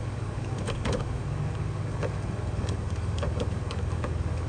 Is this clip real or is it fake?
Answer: fake